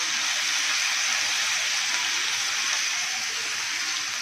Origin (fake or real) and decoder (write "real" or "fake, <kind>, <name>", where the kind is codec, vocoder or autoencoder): real